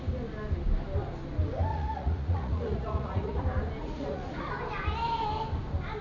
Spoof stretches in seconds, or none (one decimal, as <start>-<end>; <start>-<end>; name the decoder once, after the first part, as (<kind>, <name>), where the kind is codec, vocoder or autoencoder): 1.7-3.4 (vocoder, Vocos); 3.8-4.4